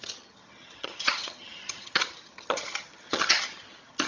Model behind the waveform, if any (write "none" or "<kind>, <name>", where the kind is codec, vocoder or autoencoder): vocoder, HiFi-GAN